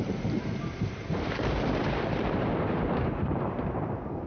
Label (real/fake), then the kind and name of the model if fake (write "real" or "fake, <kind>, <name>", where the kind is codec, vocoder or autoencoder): fake, vocoder, BigVGAN v2